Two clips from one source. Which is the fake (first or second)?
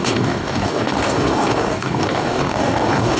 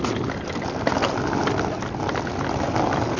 first